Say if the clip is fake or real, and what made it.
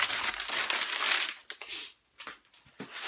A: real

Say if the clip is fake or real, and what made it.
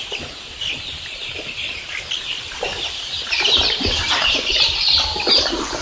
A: real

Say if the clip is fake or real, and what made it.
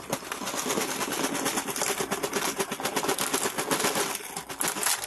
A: real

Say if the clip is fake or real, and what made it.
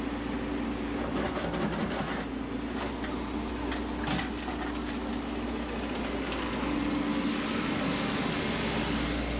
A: real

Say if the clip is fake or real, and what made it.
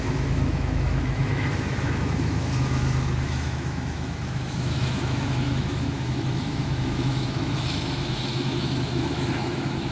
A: fake, autoencoder, DAC-VAE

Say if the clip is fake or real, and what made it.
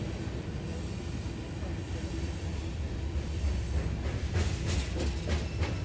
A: real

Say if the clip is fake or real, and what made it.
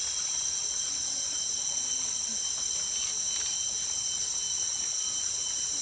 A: real